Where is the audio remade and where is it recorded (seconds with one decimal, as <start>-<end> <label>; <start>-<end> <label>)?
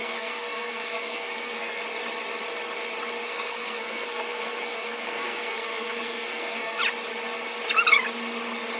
0.0-1.8 remade; 1.8-3.2 recorded; 3.2-6.8 remade; 6.8-8.8 recorded